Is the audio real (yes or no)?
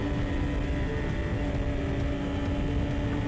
yes